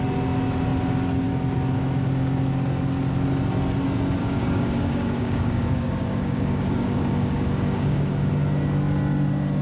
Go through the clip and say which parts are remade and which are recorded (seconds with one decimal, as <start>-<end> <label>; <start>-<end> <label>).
0.0-4.2 recorded; 4.2-8.3 remade; 8.3-9.6 recorded